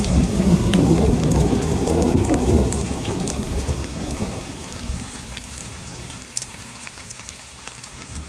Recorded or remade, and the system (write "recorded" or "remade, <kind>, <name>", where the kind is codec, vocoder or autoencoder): remade, codec, SNAC